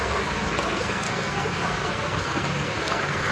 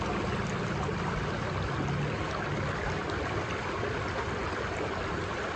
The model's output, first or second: first